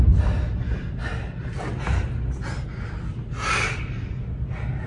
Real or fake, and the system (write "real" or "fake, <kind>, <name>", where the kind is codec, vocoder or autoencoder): real